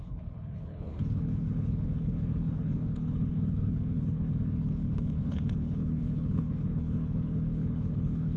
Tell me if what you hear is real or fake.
fake